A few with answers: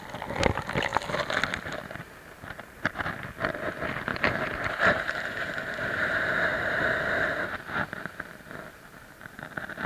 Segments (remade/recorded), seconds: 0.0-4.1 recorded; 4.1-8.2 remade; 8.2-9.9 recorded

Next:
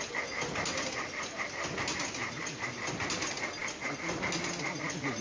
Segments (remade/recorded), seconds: 0.0-2.2 recorded; 2.2-2.9 remade; 2.9-5.2 recorded

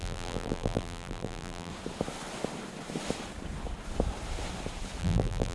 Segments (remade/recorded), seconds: 0.0-1.7 remade; 1.7-5.0 recorded; 5.0-5.5 remade

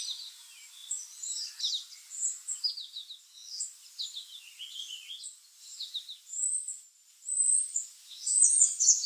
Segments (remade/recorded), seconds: 0.0-9.1 recorded

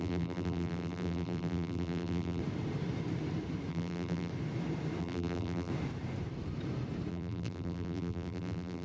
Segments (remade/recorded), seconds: 0.0-2.4 remade; 2.4-3.7 recorded; 3.7-4.3 remade; 4.3-5.0 recorded; 5.0-5.7 remade; 5.7-7.1 recorded; 7.1-8.8 remade

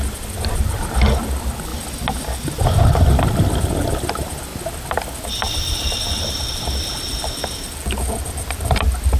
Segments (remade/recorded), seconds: 0.0-1.7 remade; 1.7-3.0 recorded; 3.0-4.5 remade; 4.5-5.8 recorded; 5.8-9.2 remade

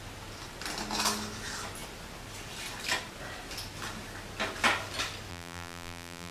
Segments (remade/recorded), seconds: 0.0-5.3 recorded; 5.3-6.3 remade

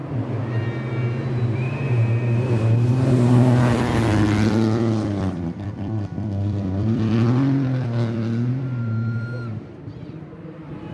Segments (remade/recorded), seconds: 0.0-4.5 recorded; 4.5-10.9 remade